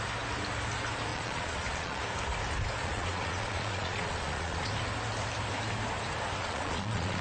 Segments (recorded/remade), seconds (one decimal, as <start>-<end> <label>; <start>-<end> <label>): 0.0-1.1 recorded; 1.1-2.0 remade; 2.0-2.8 recorded; 2.8-4.7 remade; 4.7-6.4 recorded; 6.4-7.2 remade